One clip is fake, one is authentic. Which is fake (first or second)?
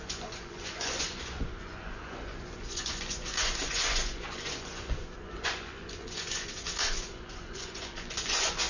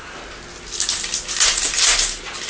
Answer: first